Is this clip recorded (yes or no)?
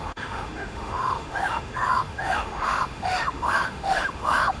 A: no